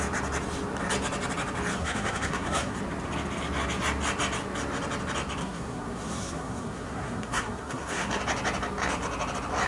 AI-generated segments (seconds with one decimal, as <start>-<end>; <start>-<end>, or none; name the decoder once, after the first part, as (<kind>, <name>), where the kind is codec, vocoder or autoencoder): 1.8-2.8 (codec, SNAC); 5.4-8.2